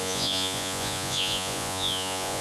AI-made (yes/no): yes